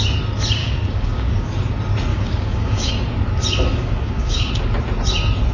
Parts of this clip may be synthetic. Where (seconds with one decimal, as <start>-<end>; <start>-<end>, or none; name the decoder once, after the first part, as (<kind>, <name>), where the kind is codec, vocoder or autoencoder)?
0.6-1.5 (codec, DAC); 2.1-2.9; 3.7-4.5